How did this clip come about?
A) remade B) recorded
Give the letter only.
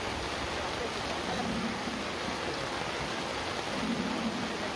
B